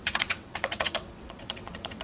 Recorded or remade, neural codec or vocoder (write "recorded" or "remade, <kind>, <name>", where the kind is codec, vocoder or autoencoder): remade, vocoder, WaveNeXt